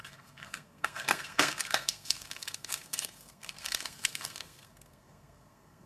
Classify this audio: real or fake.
fake